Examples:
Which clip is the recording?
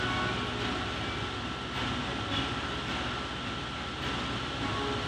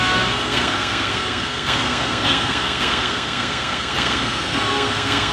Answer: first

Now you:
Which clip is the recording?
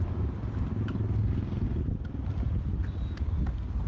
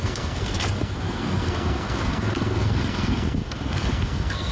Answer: first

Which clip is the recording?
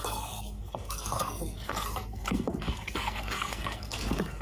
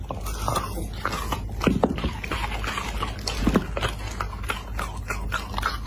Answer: second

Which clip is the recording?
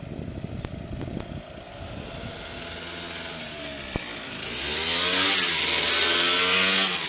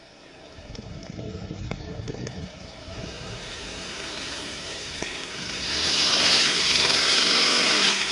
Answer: first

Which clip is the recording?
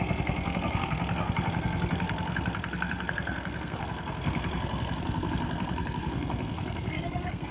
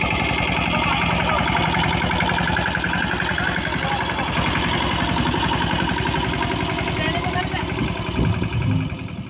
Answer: second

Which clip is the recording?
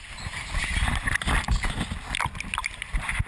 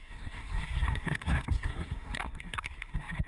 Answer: first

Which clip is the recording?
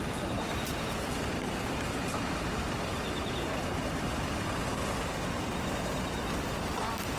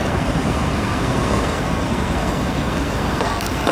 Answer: first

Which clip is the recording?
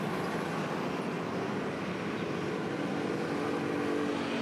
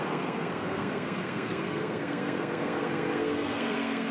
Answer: first